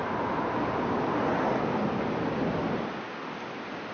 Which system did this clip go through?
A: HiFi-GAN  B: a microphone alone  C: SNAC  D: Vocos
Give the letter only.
B